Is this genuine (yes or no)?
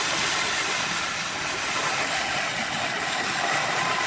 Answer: yes